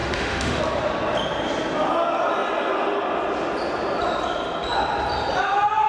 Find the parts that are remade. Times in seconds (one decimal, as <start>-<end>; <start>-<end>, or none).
0.0-0.6